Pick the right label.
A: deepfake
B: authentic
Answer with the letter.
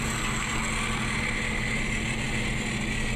B